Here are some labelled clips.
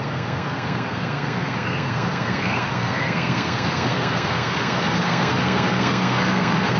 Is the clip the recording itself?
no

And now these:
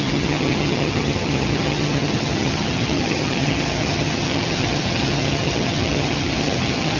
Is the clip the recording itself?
no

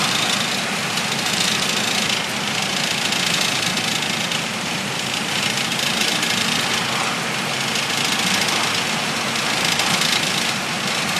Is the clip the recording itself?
yes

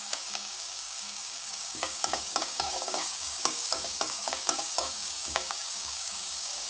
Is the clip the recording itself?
no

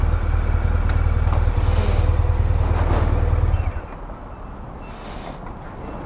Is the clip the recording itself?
yes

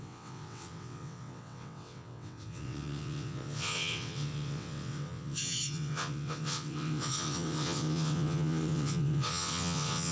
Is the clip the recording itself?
no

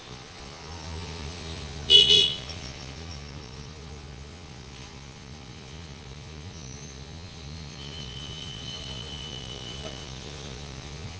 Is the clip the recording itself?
no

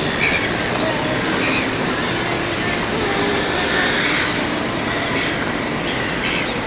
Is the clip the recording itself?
yes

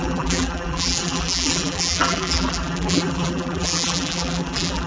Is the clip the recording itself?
no